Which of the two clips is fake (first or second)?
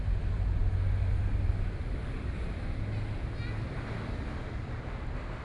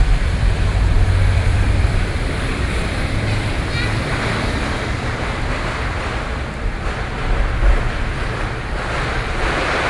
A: second